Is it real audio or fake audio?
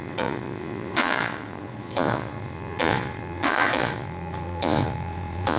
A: fake